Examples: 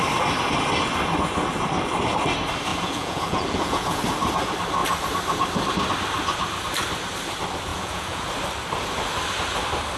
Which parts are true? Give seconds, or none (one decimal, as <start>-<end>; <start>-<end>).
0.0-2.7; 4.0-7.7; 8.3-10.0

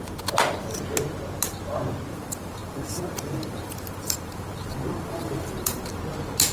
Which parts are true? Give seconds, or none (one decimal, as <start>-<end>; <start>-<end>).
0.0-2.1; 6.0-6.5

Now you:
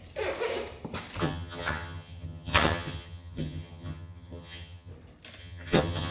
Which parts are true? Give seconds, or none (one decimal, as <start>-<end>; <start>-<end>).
0.0-1.2; 4.9-5.4

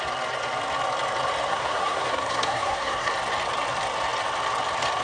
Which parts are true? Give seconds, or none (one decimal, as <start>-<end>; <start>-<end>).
0.0-1.5; 3.1-5.0

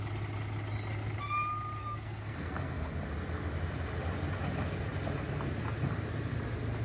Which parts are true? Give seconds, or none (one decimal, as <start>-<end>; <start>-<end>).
0.0-1.8; 3.0-6.8

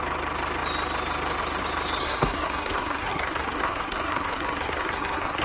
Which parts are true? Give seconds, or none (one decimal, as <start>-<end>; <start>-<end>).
0.0-2.0

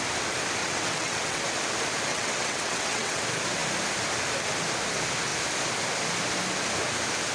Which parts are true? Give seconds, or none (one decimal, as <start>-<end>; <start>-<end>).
0.0-0.6; 1.4-2.1; 3.2-7.3